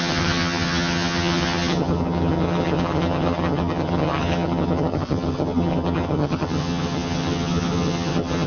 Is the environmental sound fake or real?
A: fake